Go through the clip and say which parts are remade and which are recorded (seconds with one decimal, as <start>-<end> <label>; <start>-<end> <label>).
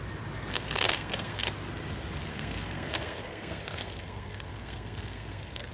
0.0-0.5 recorded; 0.5-1.5 remade; 1.5-2.3 recorded; 2.3-5.7 remade